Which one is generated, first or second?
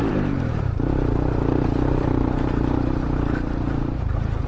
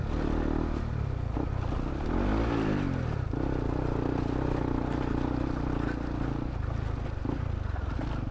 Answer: first